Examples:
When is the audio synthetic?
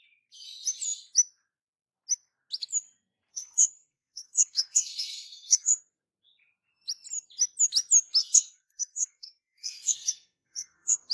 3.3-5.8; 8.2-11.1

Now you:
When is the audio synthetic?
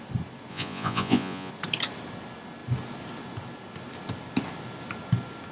0.5-1.5